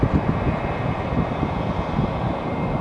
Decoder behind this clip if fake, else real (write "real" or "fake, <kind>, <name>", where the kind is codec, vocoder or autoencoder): real